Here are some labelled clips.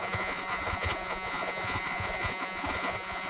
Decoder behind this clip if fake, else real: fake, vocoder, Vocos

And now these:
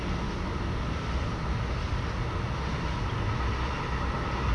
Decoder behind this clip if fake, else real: real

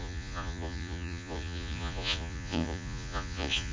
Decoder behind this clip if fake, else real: fake, vocoder, Vocos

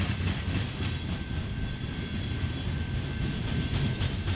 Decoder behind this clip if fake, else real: real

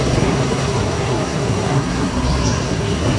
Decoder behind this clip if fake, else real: fake, codec, SNAC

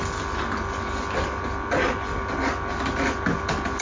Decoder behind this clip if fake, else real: real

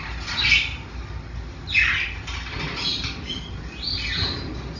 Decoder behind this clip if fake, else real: real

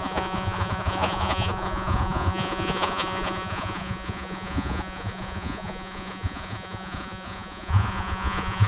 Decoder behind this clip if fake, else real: fake, vocoder, Vocos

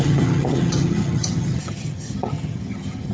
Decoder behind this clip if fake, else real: fake, vocoder, HiFi-GAN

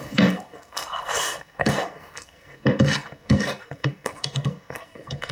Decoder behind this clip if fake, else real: fake, codec, SNAC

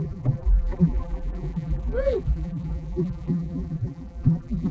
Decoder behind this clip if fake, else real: fake, vocoder, BigVGAN v2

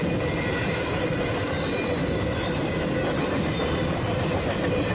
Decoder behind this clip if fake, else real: real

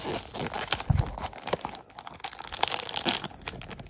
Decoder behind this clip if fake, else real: real